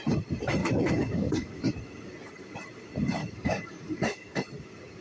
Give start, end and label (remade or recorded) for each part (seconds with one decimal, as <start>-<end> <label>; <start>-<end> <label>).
0.0-0.6 recorded; 0.6-1.5 remade; 1.5-3.2 recorded; 3.2-4.4 remade; 4.4-5.0 recorded